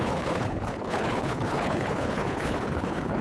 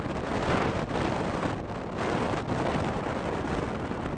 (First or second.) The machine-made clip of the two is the first